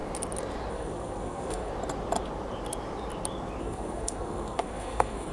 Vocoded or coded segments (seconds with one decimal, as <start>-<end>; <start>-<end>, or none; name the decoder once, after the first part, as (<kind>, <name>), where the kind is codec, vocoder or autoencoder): 0.7-1.7 (codec, SNAC); 3.6-5.3